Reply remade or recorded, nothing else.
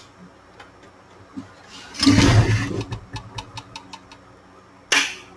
recorded